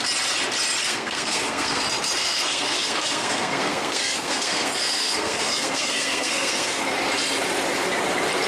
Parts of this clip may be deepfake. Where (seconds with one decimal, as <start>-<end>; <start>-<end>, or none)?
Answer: 0.8-1.8; 2.2-6.8